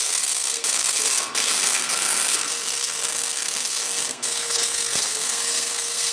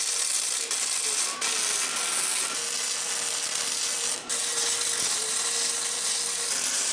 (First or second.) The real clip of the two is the second